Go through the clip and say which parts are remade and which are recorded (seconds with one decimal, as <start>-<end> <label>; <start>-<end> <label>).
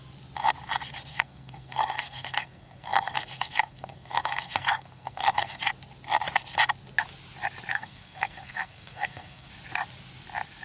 0.0-1.1 recorded; 1.1-5.6 remade; 5.6-7.7 recorded; 7.7-9.5 remade; 9.5-10.6 recorded